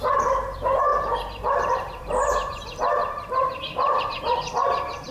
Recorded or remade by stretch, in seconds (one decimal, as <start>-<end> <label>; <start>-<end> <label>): 0.0-5.1 remade